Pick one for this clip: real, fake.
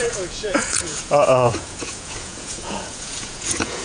fake